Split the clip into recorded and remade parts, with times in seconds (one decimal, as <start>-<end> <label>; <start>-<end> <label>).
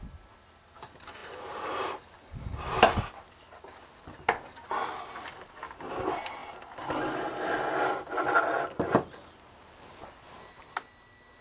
0.0-11.4 recorded